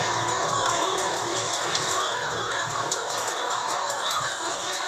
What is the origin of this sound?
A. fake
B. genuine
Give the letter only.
A